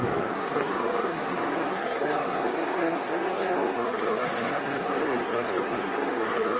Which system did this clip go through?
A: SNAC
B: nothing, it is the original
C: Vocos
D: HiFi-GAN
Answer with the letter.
A